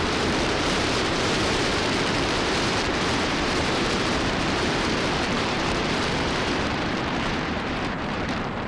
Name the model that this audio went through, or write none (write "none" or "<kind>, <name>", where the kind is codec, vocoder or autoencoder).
vocoder, BigVGAN v2